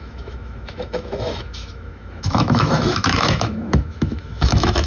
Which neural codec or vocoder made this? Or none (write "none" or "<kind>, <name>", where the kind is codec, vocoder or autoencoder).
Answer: autoencoder, DAC-VAE